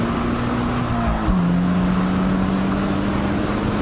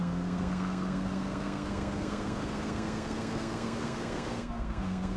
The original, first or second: first